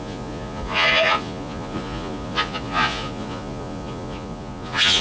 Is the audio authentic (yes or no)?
no